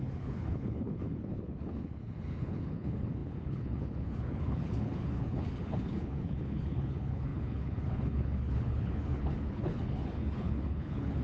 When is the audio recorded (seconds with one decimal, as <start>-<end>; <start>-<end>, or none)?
none